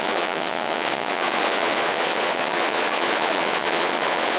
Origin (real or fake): fake